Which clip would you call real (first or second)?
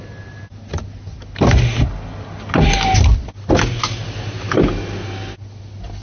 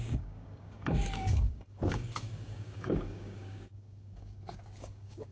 first